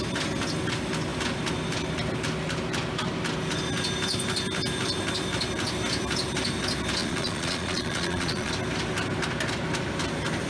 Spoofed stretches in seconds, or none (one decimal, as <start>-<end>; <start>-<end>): 7.0-8.5